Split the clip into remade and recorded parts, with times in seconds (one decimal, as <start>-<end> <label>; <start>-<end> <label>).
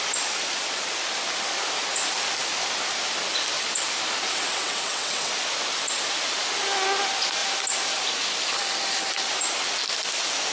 0.0-4.3 recorded; 4.3-5.3 remade; 5.3-10.5 recorded